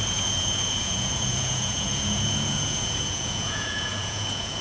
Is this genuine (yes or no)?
no